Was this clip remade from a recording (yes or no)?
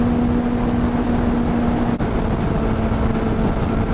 no